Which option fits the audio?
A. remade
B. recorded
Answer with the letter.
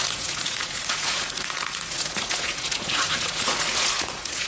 A